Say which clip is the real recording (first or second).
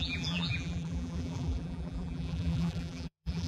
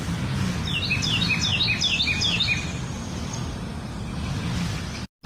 second